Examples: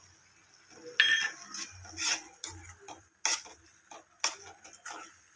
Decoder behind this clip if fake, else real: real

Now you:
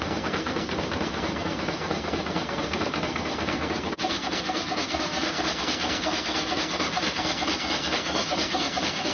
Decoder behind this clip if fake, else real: fake, codec, SNAC